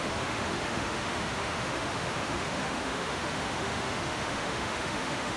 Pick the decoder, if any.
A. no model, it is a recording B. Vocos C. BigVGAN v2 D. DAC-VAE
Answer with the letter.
D